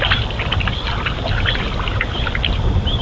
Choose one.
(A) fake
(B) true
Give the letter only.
B